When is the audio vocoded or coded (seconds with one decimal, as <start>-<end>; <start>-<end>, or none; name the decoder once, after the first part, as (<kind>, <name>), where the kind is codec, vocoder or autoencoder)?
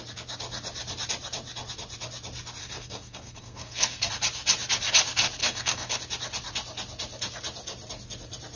2.6-4.1 (codec, SNAC); 5.4-6.0